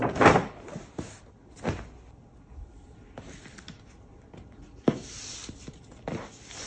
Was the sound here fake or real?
real